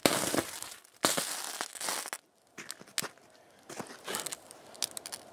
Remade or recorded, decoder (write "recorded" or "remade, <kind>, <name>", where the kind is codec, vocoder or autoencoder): recorded